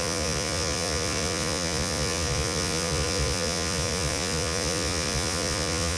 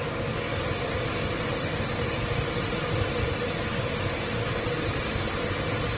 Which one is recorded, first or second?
second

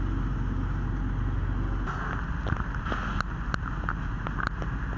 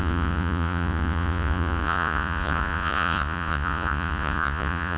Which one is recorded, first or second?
first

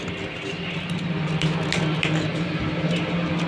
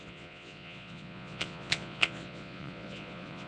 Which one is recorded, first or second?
first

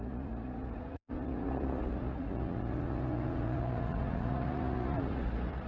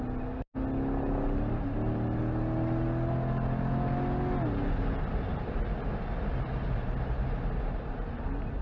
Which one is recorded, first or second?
second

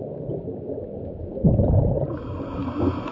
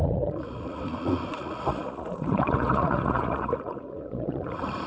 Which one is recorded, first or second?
first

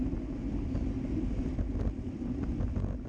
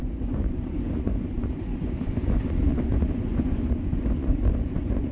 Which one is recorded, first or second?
first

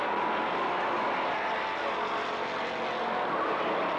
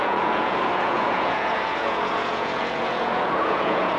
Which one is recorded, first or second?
first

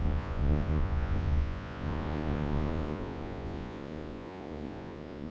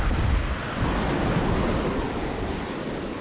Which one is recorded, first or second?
second